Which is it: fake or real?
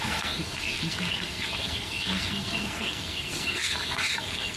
fake